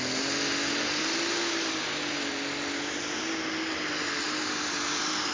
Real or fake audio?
real